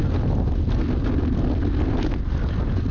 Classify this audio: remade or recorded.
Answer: recorded